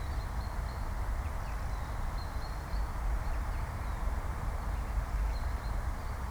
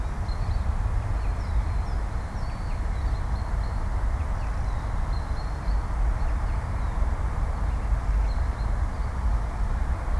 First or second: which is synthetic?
first